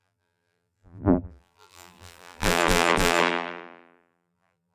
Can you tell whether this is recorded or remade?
remade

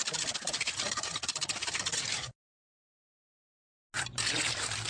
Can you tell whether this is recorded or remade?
recorded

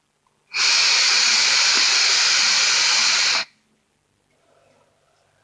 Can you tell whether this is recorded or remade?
recorded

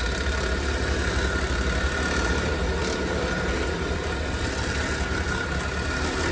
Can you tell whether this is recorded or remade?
recorded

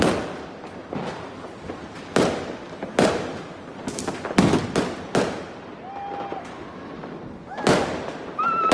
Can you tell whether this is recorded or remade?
recorded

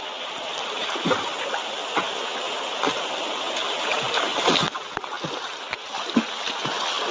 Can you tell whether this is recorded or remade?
recorded